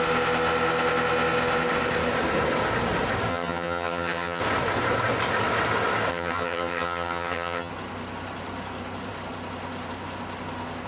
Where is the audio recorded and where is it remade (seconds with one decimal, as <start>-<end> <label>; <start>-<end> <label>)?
0.0-3.3 recorded; 3.3-4.4 remade; 4.4-6.1 recorded; 6.1-7.7 remade; 7.7-10.9 recorded